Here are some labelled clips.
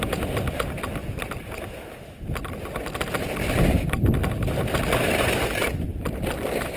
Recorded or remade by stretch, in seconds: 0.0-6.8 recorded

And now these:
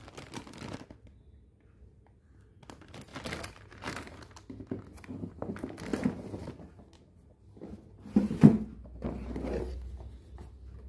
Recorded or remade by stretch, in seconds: 0.0-10.9 recorded